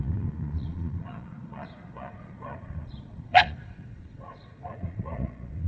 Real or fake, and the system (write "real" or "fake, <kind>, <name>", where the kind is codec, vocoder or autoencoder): fake, vocoder, Vocos